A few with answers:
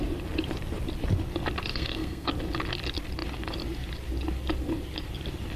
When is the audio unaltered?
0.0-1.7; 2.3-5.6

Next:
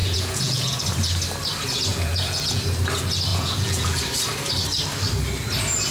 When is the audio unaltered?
0.8-1.9; 2.6-3.3; 4.0-5.9

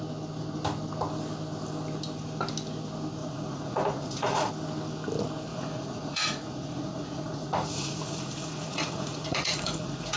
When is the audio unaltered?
0.0-3.2; 4.5-5.5

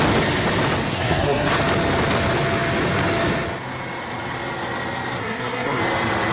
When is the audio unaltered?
0.0-0.9; 1.5-5.2; 5.8-6.3

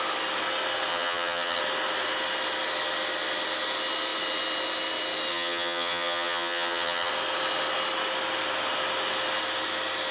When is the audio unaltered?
0.0-0.9; 1.6-5.3; 7.1-10.1

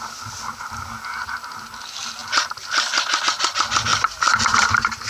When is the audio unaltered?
0.0-3.9

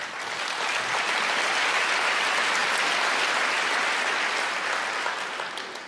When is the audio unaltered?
0.0-2.6; 3.3-5.9